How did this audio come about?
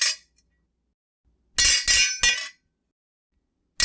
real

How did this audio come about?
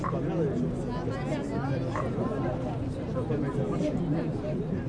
real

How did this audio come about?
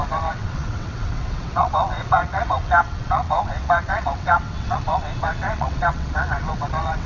fake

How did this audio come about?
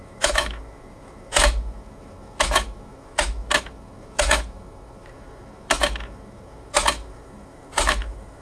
fake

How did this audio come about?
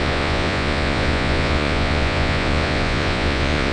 fake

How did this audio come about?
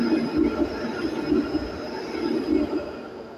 real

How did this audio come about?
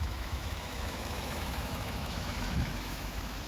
fake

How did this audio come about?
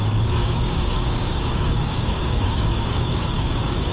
fake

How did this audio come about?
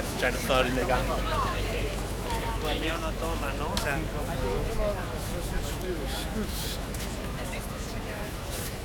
fake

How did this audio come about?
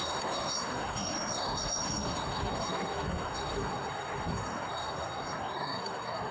fake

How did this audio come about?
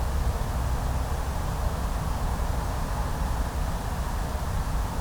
real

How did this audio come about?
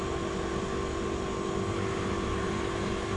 real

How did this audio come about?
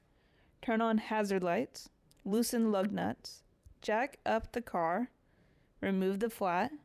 fake